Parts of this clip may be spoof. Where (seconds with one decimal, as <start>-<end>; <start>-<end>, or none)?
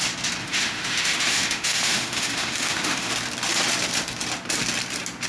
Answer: 0.4-3.1